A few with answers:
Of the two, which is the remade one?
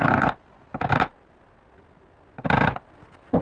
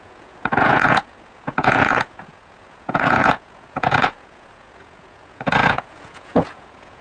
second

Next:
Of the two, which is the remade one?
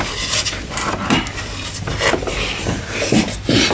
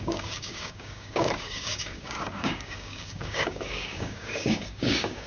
second